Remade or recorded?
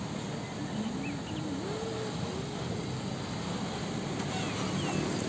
recorded